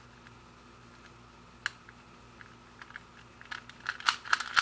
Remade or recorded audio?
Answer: recorded